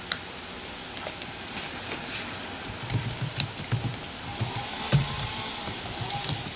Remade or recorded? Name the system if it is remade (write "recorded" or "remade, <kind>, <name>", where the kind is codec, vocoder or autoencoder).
recorded